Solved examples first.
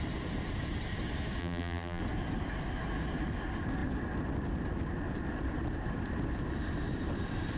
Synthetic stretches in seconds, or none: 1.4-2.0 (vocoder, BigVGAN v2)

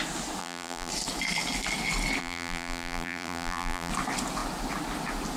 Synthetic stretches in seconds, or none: 0.4-0.9 (vocoder, BigVGAN v2); 2.2-3.9